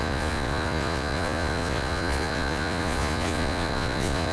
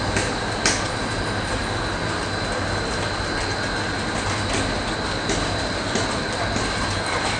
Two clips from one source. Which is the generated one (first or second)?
first